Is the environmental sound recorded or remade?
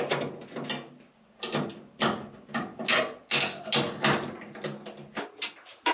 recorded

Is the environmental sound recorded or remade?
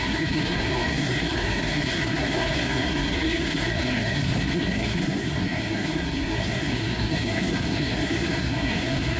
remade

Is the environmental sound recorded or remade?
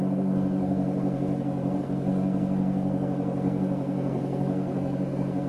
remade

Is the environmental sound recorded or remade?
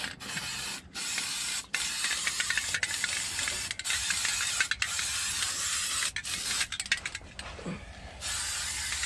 recorded